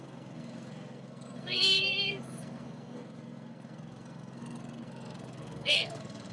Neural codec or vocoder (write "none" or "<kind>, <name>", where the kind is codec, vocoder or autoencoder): codec, SNAC